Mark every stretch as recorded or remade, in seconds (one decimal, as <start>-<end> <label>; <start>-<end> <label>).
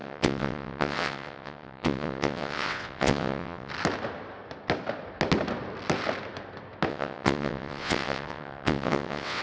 0.0-3.7 remade; 3.7-6.9 recorded; 6.9-9.4 remade